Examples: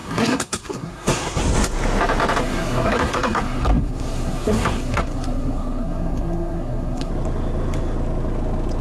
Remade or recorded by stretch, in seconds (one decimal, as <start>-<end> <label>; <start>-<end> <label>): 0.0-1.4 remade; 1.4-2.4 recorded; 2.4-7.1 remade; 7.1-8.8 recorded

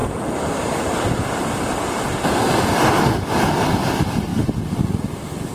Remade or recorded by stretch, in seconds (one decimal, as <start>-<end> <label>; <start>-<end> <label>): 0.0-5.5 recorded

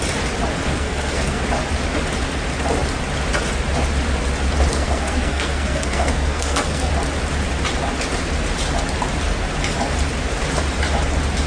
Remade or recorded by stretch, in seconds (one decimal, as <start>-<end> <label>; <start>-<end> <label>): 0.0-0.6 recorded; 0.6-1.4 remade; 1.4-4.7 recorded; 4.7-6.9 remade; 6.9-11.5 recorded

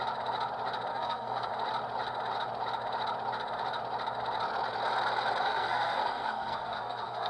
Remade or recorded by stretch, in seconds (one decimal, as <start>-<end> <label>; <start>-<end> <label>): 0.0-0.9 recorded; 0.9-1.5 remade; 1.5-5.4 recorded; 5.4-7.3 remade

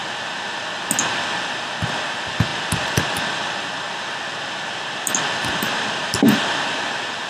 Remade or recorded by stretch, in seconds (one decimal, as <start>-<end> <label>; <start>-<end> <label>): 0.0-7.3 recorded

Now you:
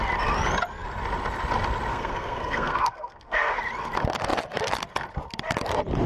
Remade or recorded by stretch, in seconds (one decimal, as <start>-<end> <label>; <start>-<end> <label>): 0.0-1.9 recorded; 1.9-3.6 remade; 3.6-6.1 recorded